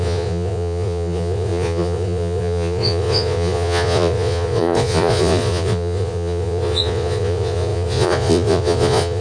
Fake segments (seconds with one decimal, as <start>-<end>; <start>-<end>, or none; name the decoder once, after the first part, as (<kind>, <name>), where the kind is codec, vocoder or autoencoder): 0.0-9.2 (vocoder, Vocos)